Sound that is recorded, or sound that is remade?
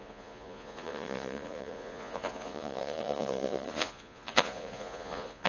remade